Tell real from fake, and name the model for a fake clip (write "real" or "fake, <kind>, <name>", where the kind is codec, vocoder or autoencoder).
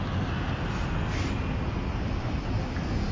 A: real